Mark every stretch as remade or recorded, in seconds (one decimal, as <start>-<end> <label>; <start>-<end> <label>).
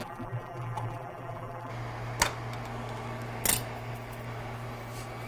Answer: 0.0-1.7 remade; 1.7-5.3 recorded